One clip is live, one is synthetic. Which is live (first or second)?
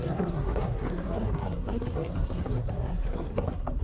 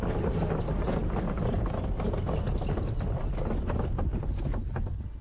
second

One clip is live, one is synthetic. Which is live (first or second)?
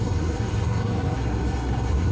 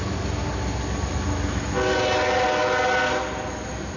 second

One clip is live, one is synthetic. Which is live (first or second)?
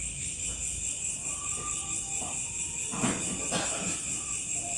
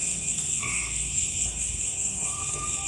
first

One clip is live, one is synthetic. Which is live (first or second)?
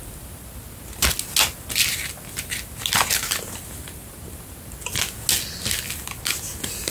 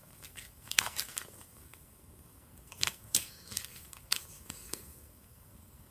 first